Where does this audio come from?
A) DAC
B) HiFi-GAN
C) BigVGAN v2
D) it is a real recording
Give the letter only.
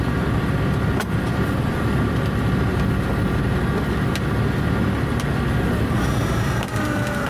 D